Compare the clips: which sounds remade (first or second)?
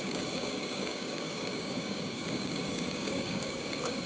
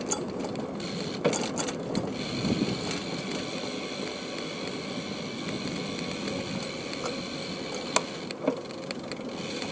first